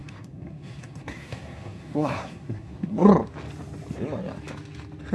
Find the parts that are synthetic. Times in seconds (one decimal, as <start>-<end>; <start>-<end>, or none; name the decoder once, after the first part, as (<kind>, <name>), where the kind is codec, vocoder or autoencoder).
0.0-3.1 (codec, SNAC)